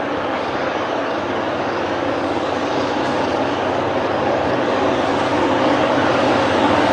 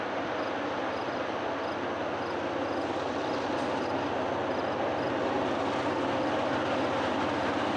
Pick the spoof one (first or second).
first